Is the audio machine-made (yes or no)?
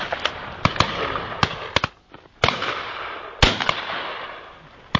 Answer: no